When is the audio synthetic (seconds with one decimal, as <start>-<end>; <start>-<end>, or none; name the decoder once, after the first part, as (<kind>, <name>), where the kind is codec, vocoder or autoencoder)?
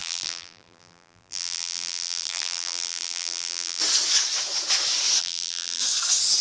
0.0-3.8 (vocoder, BigVGAN v2); 5.2-5.8